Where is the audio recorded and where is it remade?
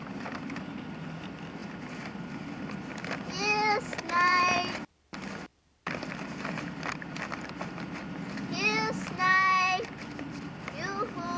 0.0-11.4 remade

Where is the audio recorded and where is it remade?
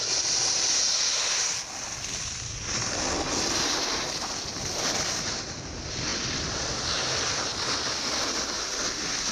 0.0-9.3 recorded